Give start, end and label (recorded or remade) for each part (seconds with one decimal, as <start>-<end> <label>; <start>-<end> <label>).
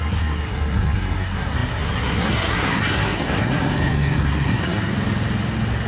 0.0-4.9 remade; 4.9-5.9 recorded